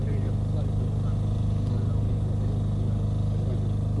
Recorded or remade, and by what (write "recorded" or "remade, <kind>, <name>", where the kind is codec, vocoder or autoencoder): recorded